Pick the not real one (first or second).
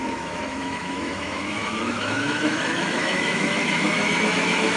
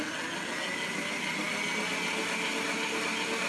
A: first